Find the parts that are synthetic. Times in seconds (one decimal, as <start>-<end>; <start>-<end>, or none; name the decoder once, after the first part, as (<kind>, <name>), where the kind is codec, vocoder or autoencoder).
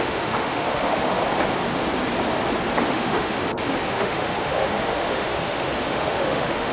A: 0.0-1.2 (autoencoder, DAC-VAE); 2.9-3.4; 3.9-6.7